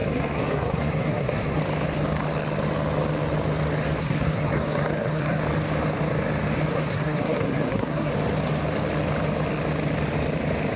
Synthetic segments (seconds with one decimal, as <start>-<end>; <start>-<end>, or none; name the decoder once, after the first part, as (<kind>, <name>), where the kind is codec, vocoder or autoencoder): 0.0-1.6 (codec, SNAC); 4.0-5.4; 6.7-8.1